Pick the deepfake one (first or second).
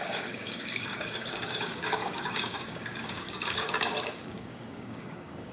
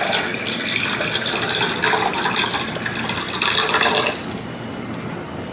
first